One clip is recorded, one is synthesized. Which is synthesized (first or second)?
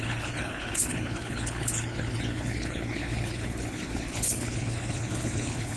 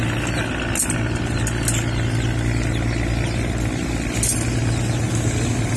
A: first